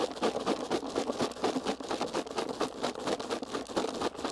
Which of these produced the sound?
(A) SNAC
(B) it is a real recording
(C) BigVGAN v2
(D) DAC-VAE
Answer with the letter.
B